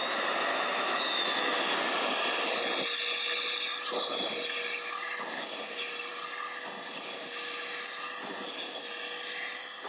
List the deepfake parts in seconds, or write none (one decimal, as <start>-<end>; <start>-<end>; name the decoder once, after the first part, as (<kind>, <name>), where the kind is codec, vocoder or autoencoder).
0.5-1.6 (autoencoder, DAC-VAE)